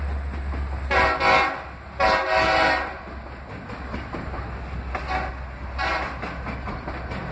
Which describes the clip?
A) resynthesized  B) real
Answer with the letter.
B